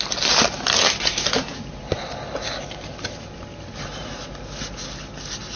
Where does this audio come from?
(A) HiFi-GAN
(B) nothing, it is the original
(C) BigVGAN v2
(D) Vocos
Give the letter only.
B